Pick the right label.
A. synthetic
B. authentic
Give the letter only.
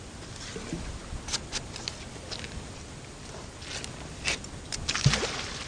B